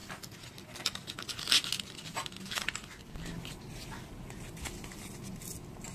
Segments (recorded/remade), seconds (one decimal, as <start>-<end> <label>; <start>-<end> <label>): 0.0-5.9 recorded